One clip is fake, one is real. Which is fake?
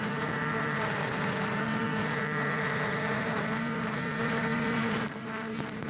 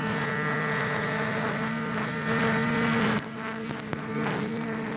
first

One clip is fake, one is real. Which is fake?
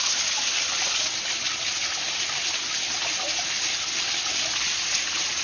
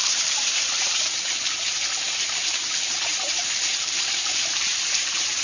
second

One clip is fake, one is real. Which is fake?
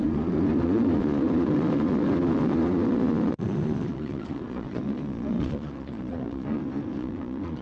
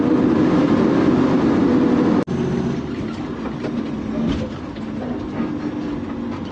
first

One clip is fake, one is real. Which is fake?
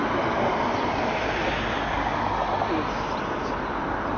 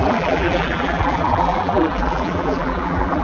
second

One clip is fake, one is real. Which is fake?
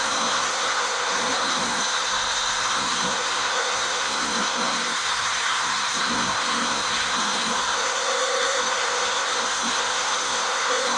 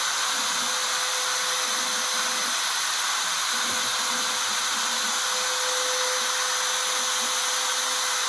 first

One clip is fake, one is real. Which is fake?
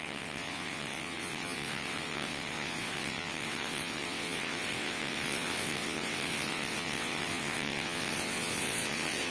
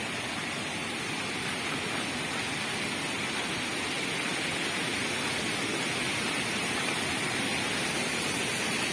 first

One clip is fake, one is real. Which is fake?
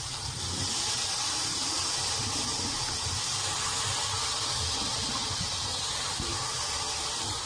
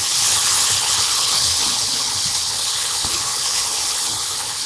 second